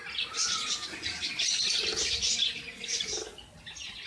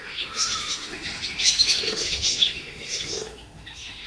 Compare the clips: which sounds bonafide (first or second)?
first